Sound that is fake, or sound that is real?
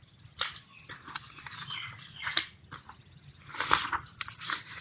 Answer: real